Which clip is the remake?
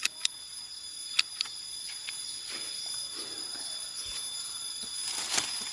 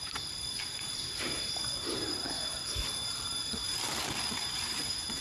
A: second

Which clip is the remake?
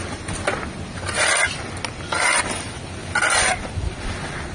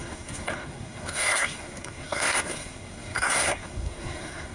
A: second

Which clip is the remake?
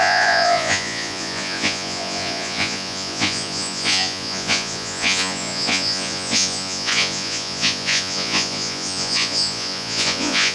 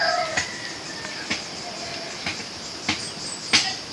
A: first